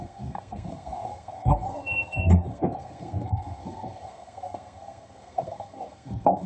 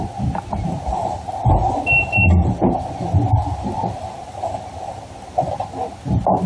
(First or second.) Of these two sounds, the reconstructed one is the first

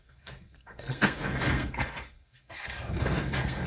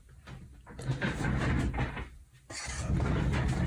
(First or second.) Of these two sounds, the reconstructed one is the first